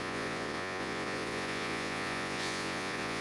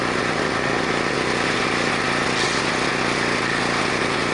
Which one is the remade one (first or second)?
first